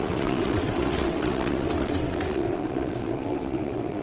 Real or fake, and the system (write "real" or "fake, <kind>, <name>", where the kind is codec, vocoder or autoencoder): fake, vocoder, WaveNeXt